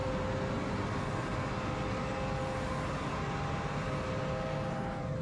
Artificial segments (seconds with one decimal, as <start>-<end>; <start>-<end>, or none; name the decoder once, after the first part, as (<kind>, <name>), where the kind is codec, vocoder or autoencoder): none